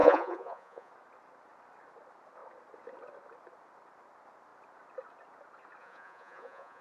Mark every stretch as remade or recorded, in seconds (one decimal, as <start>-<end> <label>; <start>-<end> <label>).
0.0-0.9 remade; 0.9-5.8 recorded; 5.8-6.8 remade